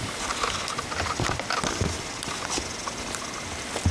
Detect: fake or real real